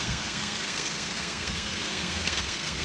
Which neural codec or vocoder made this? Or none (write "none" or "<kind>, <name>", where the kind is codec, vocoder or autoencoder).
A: codec, SNAC